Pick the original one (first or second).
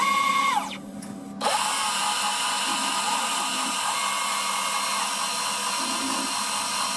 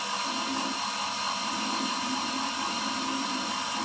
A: first